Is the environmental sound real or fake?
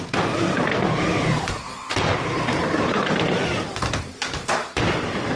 fake